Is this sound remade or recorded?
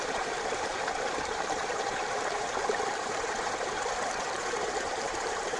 remade